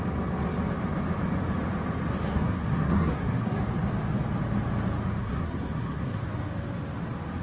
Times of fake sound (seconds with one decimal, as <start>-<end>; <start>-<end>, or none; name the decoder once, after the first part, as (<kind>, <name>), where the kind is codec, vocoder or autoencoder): 2.2-3.6 (codec, SNAC); 5.2-6.2